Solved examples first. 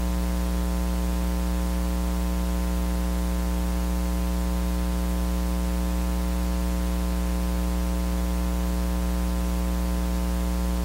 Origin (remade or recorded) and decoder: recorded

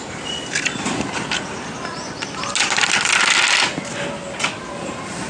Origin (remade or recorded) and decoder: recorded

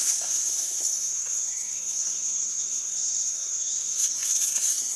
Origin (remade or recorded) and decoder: remade, codec, SNAC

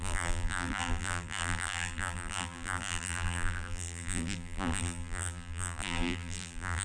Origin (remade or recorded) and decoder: remade, vocoder, BigVGAN v2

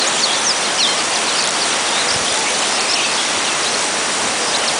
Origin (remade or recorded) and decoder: recorded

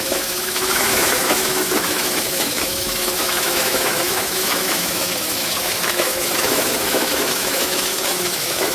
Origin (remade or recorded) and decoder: remade, autoencoder, DAC-VAE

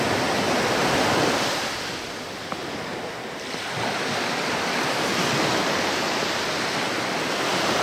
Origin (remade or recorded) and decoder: recorded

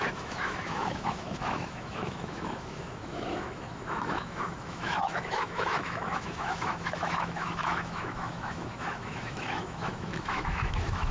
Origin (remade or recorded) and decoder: remade, autoencoder, DAC-VAE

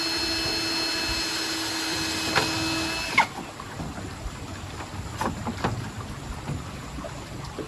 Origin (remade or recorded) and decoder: recorded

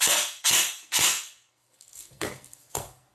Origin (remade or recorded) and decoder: remade, codec, SNAC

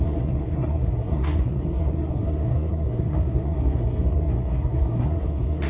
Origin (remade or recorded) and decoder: remade, codec, SNAC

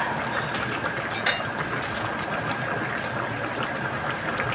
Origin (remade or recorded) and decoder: recorded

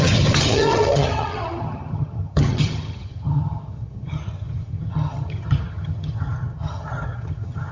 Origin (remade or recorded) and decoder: remade, vocoder, HiFi-GAN